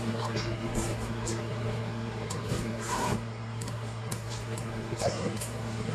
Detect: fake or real fake